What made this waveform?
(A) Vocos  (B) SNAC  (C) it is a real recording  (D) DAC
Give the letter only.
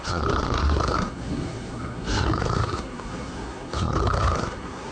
B